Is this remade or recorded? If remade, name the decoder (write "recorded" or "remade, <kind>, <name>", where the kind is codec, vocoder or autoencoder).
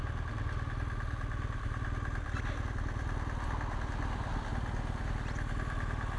recorded